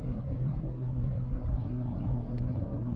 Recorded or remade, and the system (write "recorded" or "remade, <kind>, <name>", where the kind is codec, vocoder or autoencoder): remade, codec, SNAC